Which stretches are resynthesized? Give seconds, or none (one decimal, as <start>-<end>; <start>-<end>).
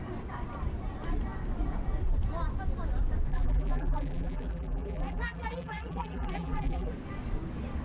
3.3-6.9